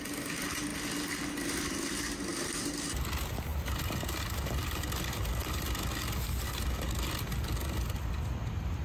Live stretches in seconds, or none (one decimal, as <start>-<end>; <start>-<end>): 0.0-8.8